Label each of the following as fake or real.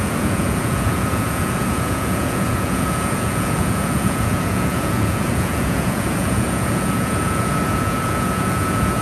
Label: fake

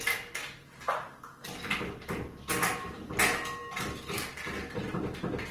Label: real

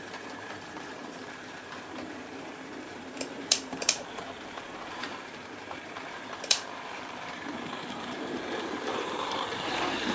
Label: fake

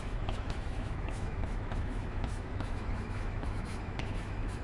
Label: fake